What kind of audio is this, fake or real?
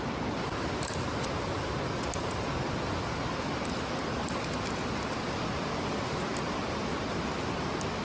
real